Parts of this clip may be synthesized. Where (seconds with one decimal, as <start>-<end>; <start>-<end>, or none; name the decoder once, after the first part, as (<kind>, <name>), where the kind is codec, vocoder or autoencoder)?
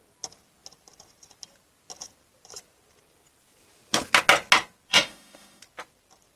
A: 4.9-5.6 (autoencoder, DAC-VAE)